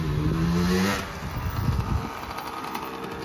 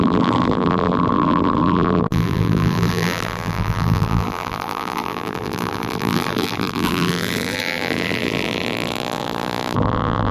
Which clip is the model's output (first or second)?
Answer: second